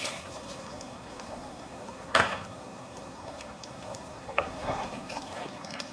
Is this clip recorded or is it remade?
remade